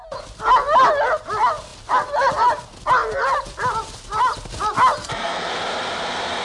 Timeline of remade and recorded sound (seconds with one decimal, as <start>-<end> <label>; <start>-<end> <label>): 0.0-5.0 recorded; 5.0-5.5 remade; 5.5-6.4 recorded